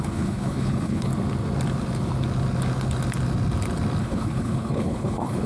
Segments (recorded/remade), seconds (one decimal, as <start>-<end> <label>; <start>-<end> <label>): 0.0-1.1 remade; 1.1-4.0 recorded; 4.0-5.5 remade